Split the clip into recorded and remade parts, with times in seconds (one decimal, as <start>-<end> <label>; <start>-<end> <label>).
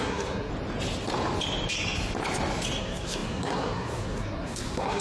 0.0-0.5 remade; 0.5-2.8 recorded; 2.8-5.0 remade